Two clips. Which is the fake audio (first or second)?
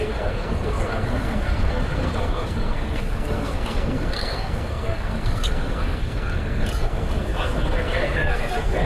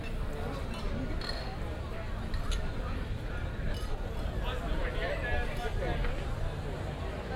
first